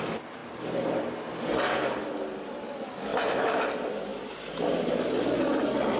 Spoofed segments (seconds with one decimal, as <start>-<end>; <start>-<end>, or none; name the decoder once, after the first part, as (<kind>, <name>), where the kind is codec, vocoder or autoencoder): 3.1-3.6 (vocoder, BigVGAN v2)